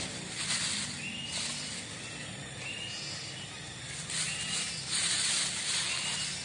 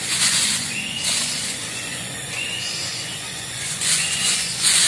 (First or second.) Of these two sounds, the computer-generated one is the second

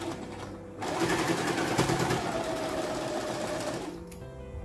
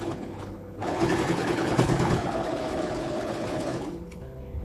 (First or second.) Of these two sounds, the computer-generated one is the second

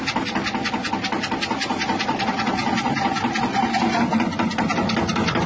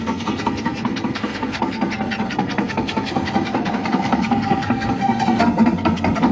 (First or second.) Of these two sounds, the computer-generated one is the second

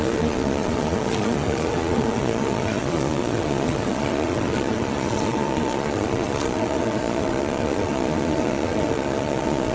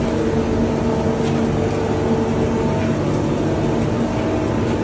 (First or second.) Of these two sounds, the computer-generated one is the first